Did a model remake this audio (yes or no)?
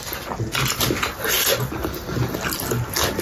no